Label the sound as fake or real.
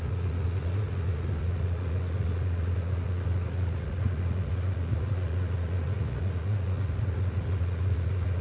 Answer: fake